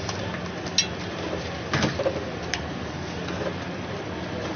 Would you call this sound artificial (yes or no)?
no